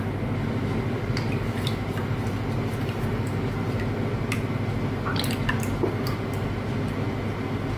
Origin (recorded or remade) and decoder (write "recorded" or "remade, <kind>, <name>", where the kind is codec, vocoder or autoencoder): recorded